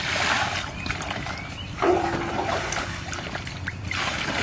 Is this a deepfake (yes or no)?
yes